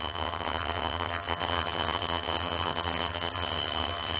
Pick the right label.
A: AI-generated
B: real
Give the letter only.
A